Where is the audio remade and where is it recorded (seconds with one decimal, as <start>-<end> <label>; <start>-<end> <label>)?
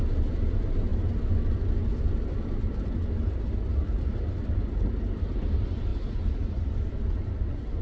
0.0-7.8 recorded